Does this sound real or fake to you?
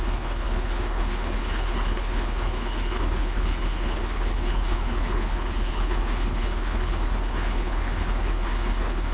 fake